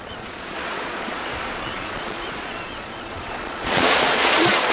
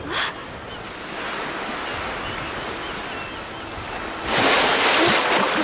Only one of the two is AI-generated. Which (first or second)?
first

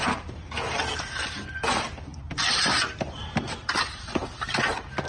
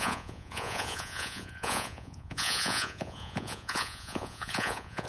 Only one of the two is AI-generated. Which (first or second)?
second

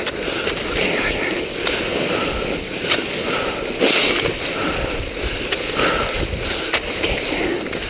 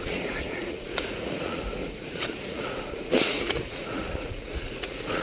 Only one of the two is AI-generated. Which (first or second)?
second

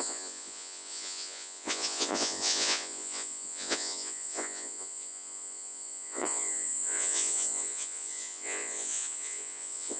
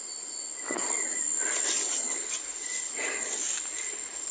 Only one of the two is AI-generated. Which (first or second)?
first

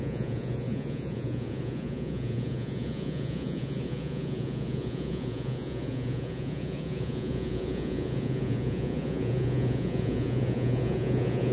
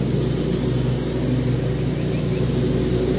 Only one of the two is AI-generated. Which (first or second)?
first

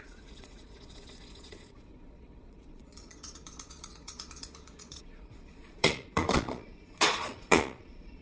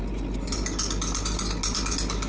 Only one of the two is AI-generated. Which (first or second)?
first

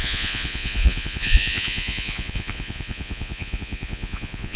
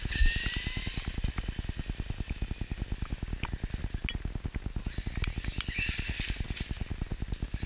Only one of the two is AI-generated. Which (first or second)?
first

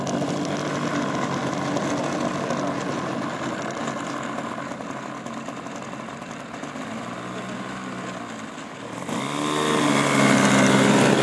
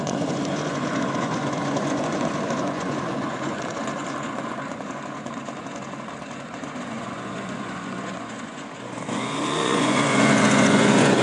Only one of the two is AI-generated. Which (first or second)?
second